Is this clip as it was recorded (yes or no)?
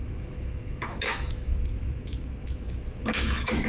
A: no